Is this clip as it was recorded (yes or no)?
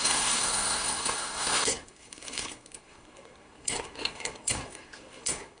no